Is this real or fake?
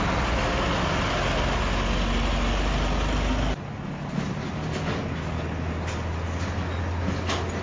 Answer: real